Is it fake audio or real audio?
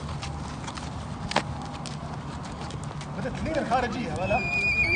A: real